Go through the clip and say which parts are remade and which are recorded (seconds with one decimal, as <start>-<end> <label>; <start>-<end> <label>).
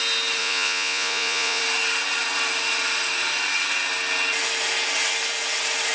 0.0-0.4 recorded; 0.4-1.6 remade; 1.6-5.9 recorded